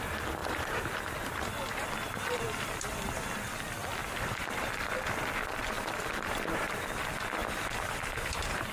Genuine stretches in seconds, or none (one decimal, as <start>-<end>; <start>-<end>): 0.0-0.4; 3.5-4.0; 5.1-7.4